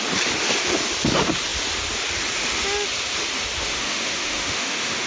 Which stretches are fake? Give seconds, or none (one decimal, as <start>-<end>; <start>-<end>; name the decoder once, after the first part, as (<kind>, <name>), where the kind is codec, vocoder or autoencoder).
3.6-5.1 (autoencoder, DAC-VAE)